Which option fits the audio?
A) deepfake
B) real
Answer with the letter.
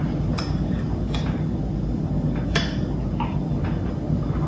B